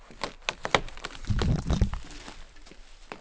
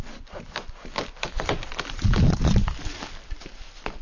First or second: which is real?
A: first